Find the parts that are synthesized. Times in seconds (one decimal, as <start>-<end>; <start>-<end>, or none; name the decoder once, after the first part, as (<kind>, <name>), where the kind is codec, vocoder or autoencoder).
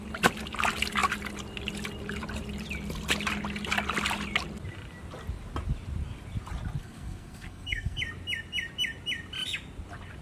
6.8-8.0 (codec, SNAC)